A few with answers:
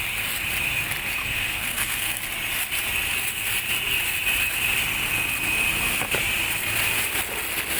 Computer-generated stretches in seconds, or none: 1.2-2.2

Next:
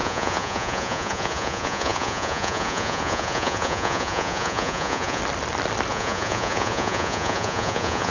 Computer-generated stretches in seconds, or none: 0.0-5.2; 5.9-8.1

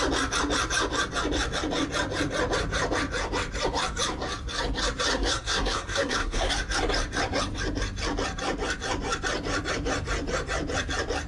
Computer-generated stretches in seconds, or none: 5.1-6.5

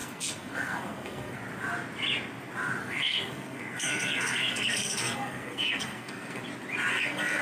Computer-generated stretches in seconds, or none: 0.0-1.4; 2.8-6.4; 6.9-7.4

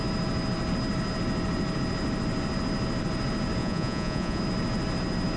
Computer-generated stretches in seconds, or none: 3.6-4.4

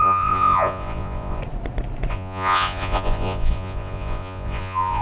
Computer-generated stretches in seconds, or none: 0.0-1.4; 2.1-5.0

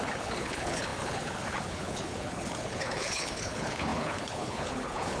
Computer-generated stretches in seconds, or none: 0.0-5.2